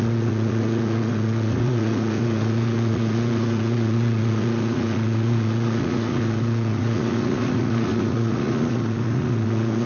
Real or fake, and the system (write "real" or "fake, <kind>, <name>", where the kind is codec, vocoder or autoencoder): fake, vocoder, Vocos